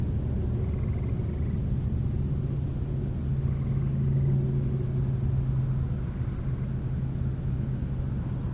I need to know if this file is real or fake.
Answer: real